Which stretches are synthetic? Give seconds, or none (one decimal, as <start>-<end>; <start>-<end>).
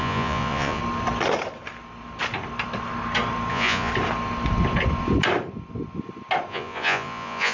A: 0.0-0.8; 3.5-3.9; 6.5-7.5